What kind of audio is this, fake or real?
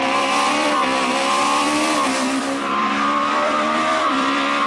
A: fake